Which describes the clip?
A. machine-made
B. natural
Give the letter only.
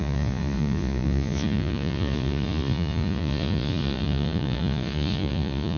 A